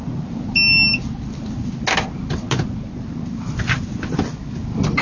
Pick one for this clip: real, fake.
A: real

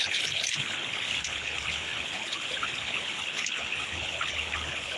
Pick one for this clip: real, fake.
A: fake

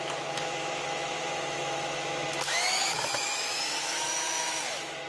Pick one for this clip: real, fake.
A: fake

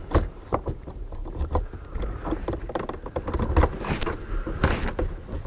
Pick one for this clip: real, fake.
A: fake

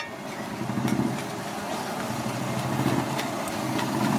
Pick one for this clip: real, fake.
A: real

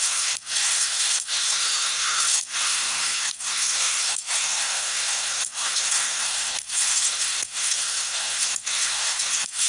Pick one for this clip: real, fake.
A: fake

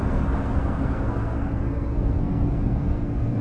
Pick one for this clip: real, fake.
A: fake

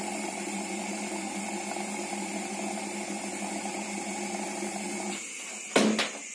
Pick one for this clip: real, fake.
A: real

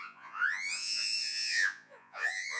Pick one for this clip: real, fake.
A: fake